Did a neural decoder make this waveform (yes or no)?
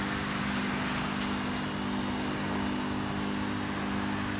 no